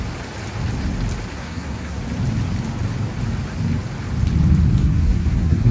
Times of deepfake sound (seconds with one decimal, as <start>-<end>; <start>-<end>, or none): 1.3-2.0; 4.8-5.7